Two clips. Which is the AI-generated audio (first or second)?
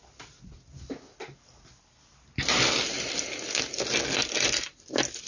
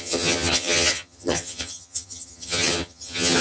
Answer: second